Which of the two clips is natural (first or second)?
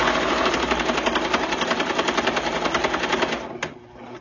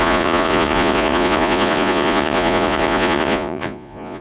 first